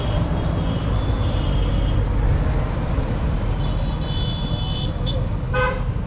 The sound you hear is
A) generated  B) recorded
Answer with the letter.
B